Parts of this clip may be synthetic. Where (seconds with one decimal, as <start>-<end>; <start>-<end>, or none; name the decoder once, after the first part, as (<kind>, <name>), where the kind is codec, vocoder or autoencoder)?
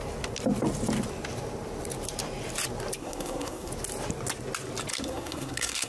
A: 3.0-3.7 (codec, SNAC); 4.9-5.9